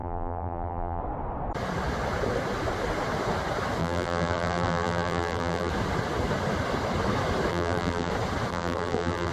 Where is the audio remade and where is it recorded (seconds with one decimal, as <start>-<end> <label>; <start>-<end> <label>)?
0.0-1.0 remade; 1.0-3.8 recorded; 3.8-5.7 remade; 5.7-7.5 recorded; 7.5-8.1 remade; 8.1-8.5 recorded; 8.5-9.3 remade